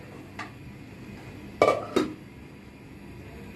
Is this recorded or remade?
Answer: recorded